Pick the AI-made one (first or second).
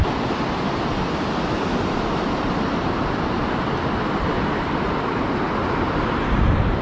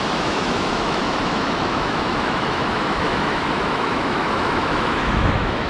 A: second